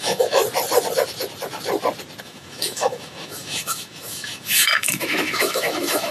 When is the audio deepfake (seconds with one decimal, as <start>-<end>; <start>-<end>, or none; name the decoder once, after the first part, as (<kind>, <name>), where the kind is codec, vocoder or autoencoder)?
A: 0.0-0.4 (autoencoder, DAC-VAE); 2.2-6.1